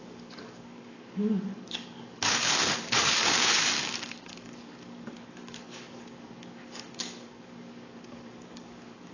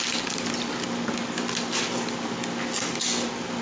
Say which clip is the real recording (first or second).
second